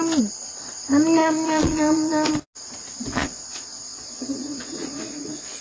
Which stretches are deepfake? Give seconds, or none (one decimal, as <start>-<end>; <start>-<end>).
1.2-2.3; 3.1-5.6